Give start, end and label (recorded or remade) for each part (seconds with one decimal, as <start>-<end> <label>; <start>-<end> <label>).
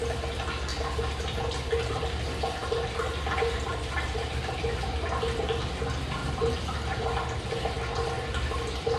0.0-9.0 recorded